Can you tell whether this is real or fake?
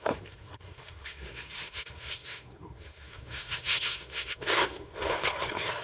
fake